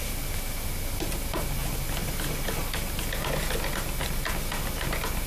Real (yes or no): yes